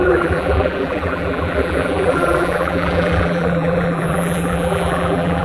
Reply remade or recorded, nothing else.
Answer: remade